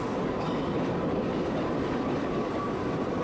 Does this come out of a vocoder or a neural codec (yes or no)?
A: no